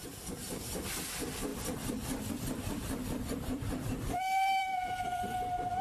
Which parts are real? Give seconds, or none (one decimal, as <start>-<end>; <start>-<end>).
1.5-2.3